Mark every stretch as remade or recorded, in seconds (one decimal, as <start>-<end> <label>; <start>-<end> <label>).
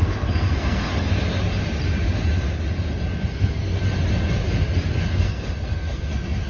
0.0-0.9 remade; 0.9-3.3 recorded; 3.3-3.8 remade; 3.8-5.1 recorded; 5.1-6.5 remade